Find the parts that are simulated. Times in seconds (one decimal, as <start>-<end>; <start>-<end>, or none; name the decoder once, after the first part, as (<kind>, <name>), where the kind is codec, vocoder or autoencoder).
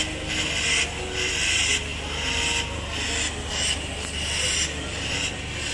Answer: none